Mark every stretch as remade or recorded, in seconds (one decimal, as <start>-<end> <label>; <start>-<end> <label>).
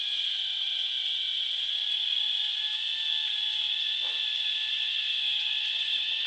0.0-1.8 remade; 1.8-4.7 recorded; 4.7-6.3 remade